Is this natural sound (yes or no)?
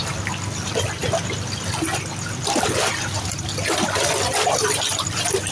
yes